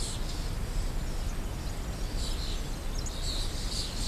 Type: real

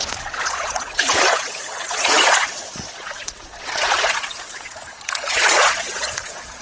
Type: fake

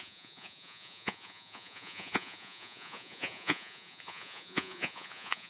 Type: fake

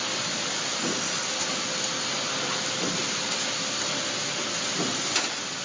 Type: real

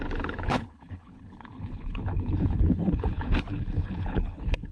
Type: fake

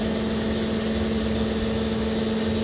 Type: real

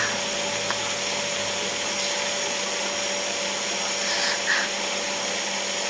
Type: real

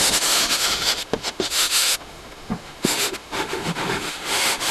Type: fake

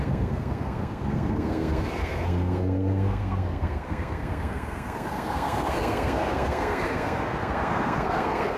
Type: fake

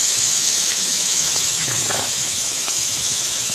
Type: fake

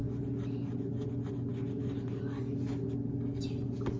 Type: real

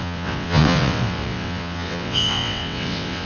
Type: fake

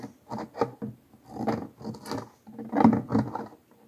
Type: real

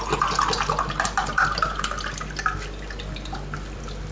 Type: real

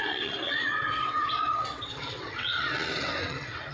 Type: fake